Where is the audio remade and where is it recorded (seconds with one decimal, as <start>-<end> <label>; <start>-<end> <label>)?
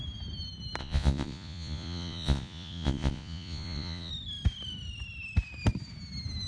0.0-0.8 recorded; 0.8-4.1 remade; 4.1-6.5 recorded